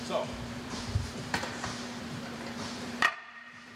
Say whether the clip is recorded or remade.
remade